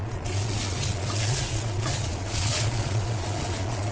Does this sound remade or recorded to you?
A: remade